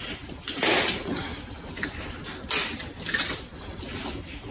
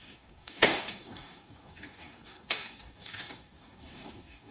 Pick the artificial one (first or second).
second